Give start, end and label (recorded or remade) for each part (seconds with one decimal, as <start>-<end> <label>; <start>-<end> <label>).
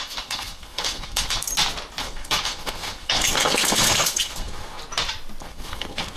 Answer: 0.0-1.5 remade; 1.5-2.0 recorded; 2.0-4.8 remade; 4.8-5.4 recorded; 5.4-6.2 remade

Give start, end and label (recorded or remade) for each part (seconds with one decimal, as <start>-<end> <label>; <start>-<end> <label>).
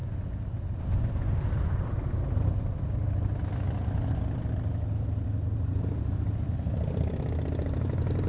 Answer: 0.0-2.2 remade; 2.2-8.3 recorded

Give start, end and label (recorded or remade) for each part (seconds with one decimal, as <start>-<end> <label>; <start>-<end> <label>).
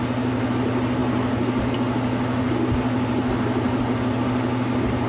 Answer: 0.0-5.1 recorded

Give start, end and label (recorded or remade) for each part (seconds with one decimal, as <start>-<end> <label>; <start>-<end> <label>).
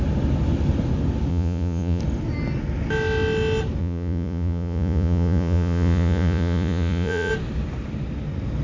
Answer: 0.0-1.3 recorded; 1.3-2.0 remade; 2.0-3.8 recorded; 3.8-7.3 remade; 7.3-8.6 recorded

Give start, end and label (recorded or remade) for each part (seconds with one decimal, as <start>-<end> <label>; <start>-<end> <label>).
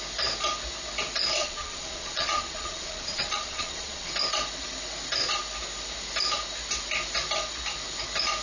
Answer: 0.0-1.4 recorded; 1.4-4.1 remade; 4.1-8.4 recorded